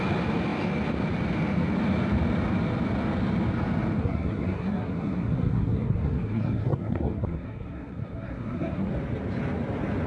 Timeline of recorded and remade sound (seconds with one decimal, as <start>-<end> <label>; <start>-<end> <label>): 0.0-4.0 recorded; 4.0-8.9 remade; 8.9-10.1 recorded